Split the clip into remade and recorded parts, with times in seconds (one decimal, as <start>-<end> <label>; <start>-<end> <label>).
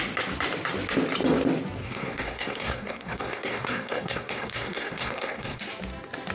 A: 0.0-1.8 recorded; 1.8-5.6 remade; 5.6-6.3 recorded